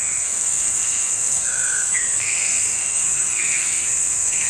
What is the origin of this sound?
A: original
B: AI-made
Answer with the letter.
B